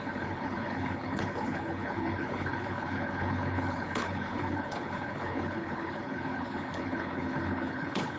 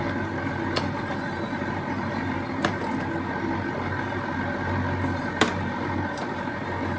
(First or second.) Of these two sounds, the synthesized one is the first